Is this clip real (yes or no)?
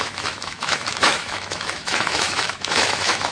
no